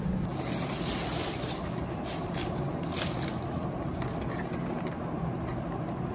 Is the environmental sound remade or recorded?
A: recorded